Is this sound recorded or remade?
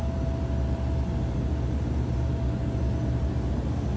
recorded